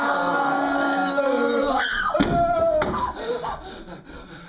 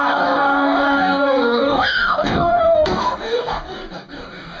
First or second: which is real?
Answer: first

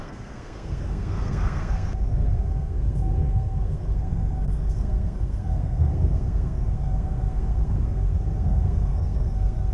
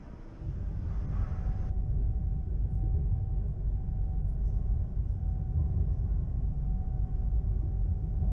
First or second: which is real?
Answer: second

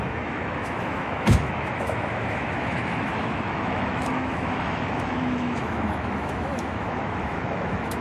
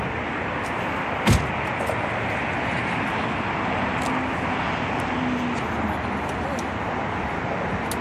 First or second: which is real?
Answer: second